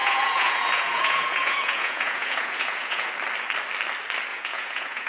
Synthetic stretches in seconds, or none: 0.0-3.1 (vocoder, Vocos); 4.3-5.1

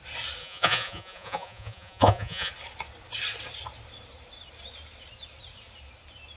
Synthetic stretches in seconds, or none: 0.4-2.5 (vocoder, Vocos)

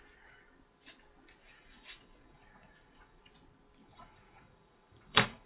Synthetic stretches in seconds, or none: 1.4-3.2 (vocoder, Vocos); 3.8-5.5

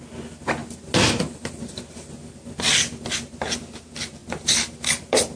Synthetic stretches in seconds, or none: none

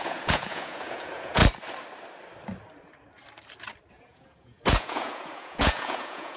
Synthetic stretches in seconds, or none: 0.0-1.4 (vocoder, Vocos); 3.9-6.4

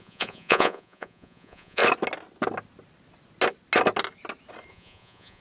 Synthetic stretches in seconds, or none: 0.0-1.8 (vocoder, Vocos); 4.7-5.4